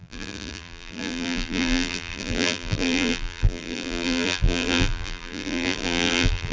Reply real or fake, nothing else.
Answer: fake